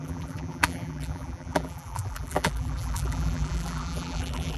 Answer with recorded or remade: remade